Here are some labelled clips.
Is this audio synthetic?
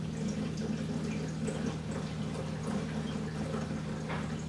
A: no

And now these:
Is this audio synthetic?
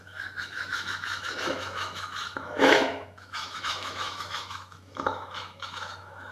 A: yes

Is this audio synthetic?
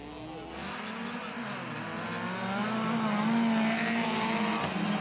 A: no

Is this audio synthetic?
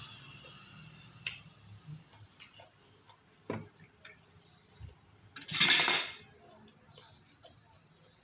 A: no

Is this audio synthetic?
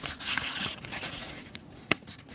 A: yes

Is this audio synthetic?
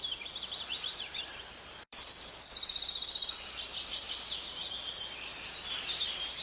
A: yes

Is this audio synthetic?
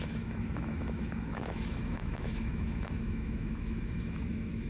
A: yes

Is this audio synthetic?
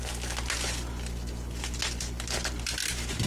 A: no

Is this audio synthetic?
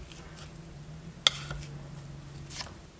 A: no